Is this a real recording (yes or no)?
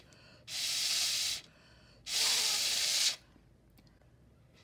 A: yes